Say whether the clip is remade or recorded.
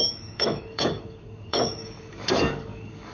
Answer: remade